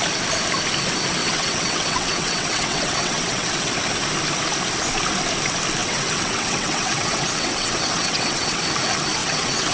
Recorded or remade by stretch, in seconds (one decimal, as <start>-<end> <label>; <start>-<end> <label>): 0.0-1.2 recorded; 1.2-3.7 remade; 3.7-5.8 recorded; 5.8-8.6 remade; 8.6-9.2 recorded; 9.2-9.7 remade